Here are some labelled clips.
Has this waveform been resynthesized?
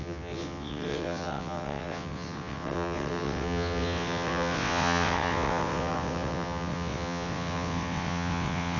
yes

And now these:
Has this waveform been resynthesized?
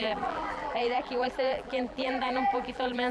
yes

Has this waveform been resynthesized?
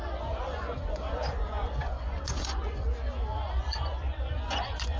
yes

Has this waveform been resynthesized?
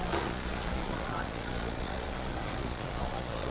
yes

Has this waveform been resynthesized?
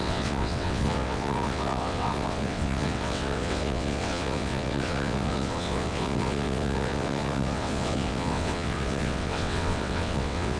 yes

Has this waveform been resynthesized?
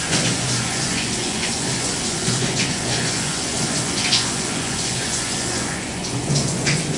yes